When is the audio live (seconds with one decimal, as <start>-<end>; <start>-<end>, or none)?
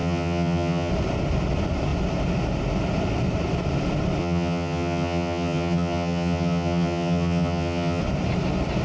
0.9-4.2; 8.0-8.8